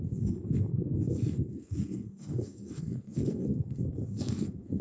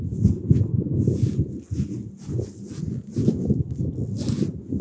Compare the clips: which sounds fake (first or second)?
first